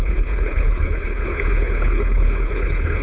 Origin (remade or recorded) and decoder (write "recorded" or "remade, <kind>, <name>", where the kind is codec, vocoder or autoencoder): remade, codec, HILCodec